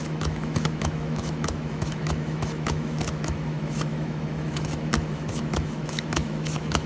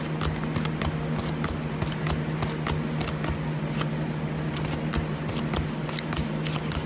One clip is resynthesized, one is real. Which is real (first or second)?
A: second